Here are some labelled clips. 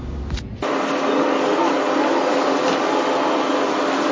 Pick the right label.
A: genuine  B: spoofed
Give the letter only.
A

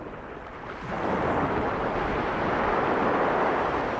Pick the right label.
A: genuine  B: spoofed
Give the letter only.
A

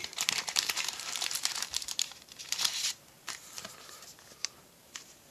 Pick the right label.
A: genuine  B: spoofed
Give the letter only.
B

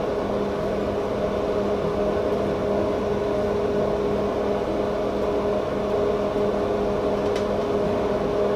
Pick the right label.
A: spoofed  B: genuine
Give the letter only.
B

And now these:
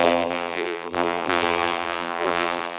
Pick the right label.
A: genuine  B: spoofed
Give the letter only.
B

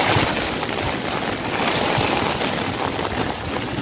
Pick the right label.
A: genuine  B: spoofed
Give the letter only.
B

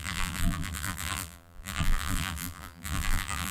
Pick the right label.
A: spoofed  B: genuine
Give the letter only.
A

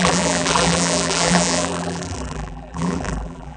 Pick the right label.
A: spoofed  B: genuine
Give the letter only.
A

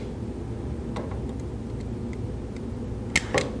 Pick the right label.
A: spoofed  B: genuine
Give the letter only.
B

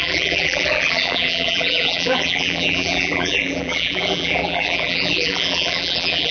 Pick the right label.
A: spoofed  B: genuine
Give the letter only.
A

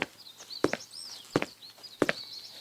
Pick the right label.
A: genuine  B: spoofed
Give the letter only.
A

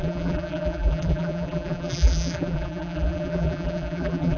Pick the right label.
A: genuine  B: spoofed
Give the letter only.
B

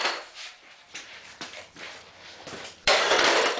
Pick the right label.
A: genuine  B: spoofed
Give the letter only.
B